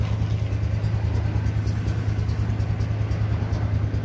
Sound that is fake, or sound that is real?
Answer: real